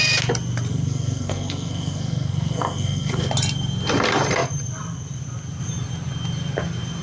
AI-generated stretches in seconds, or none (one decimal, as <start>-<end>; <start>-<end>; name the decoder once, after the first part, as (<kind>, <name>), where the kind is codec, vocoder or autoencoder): 0.7-3.3 (codec, SNAC)